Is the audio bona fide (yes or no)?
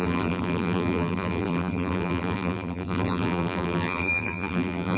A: no